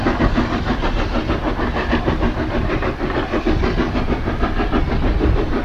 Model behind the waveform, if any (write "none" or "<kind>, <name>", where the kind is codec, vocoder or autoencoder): none